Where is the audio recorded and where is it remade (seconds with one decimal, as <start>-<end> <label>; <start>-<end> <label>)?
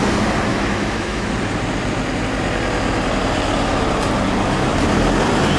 0.0-0.5 recorded; 0.5-1.3 remade; 1.3-5.6 recorded